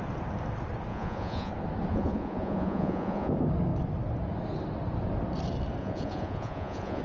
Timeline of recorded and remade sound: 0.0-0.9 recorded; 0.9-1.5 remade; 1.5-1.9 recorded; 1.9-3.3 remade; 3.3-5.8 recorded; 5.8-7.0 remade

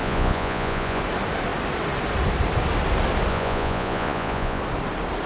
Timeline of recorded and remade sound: 0.0-1.0 remade; 1.0-3.3 recorded; 3.3-4.6 remade; 4.6-5.3 recorded